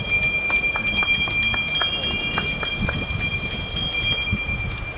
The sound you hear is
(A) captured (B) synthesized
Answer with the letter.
A